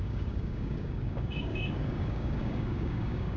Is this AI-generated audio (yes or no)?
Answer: yes